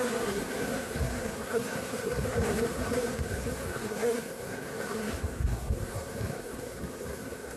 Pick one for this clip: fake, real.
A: fake